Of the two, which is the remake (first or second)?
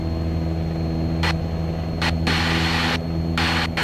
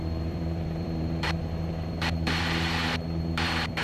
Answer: second